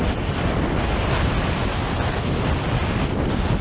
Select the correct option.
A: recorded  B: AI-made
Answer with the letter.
A